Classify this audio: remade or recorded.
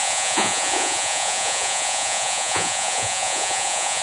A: remade